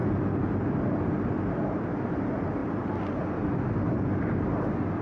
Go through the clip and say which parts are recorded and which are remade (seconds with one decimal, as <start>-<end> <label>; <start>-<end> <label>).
0.0-5.0 recorded